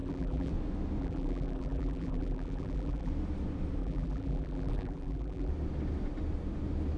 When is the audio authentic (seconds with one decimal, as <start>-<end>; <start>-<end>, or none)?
0.5-1.0; 3.1-3.8; 5.5-7.0